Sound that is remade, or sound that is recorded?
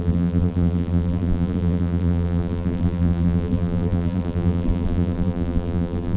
remade